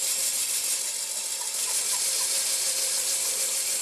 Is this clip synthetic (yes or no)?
no